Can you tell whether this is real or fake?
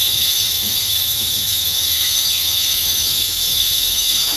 fake